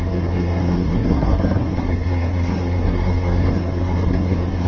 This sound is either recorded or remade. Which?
remade